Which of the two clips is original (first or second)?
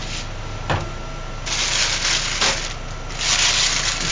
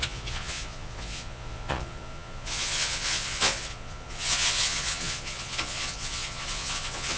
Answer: first